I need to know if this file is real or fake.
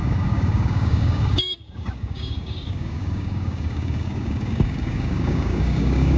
fake